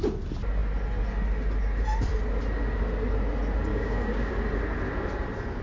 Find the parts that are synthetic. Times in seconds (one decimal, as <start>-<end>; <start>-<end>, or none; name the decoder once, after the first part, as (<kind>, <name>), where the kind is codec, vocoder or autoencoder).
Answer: 3.7-4.3 (codec, DAC)